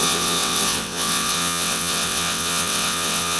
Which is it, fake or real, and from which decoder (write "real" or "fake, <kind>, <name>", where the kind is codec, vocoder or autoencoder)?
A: fake, vocoder, WaveNeXt